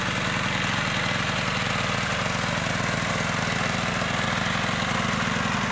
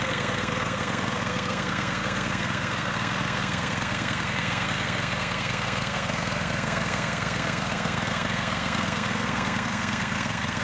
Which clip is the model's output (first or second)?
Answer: second